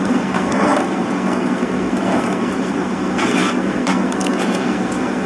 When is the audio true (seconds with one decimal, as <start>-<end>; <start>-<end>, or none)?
none